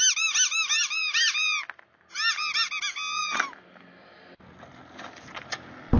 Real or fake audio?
real